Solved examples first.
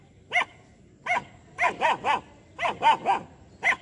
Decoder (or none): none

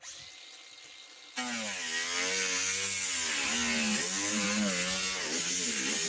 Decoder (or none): none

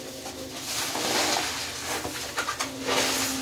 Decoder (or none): none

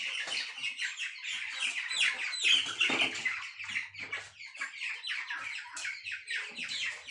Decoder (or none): none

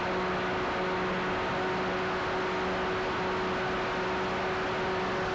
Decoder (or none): none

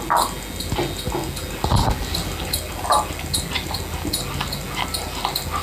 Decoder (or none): none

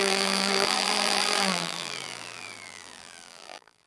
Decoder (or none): vocoder, BigVGAN v2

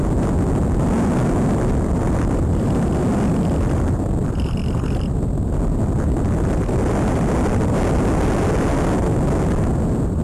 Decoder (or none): none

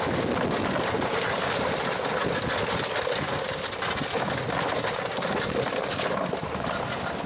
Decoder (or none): none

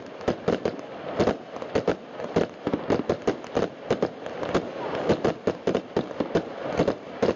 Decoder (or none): none